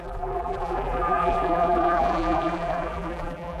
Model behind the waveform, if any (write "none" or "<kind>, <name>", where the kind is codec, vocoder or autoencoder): vocoder, BigVGAN v2